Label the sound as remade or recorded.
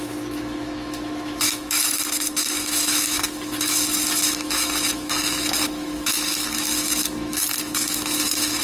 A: remade